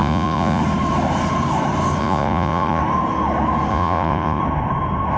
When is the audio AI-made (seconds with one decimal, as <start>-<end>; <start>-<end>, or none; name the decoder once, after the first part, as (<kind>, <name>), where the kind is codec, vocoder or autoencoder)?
0.0-0.6 (vocoder, Vocos); 2.0-2.8; 3.7-4.4